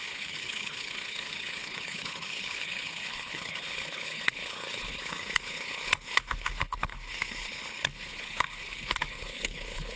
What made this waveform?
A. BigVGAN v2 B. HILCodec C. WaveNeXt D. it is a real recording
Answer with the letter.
B